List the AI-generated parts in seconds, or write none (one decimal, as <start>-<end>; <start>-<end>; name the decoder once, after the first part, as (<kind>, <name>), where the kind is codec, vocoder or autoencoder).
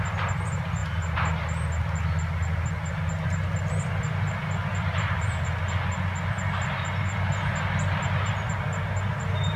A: none